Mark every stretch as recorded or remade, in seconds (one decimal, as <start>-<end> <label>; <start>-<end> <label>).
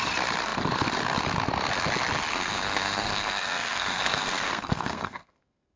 0.0-2.3 recorded; 2.3-5.8 remade